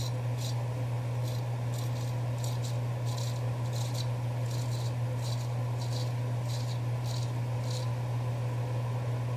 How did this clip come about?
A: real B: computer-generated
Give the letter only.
B